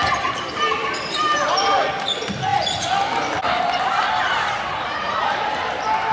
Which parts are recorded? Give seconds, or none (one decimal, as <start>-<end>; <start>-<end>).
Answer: 2.1-2.5; 3.6-6.1